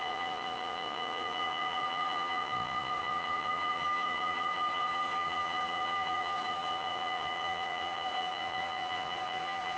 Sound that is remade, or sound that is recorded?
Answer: remade